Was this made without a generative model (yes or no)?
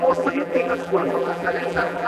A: no